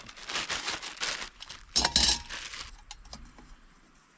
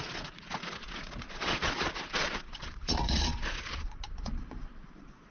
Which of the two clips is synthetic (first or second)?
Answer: second